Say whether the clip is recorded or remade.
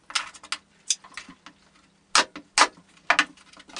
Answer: recorded